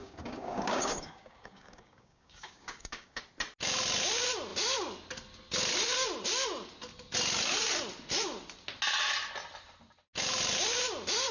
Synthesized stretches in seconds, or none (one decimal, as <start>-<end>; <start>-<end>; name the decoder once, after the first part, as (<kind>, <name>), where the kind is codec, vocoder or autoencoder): 0.0-3.2 (codec, DAC)